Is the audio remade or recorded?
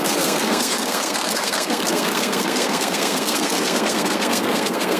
remade